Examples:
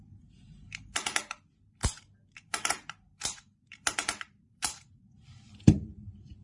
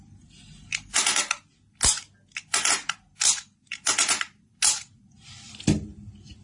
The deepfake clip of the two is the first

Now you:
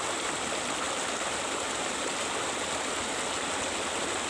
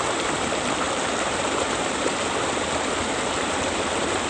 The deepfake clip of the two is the second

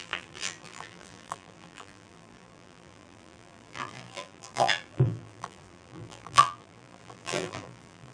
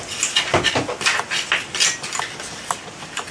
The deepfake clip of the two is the first